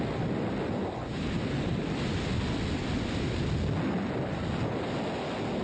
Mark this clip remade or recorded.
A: recorded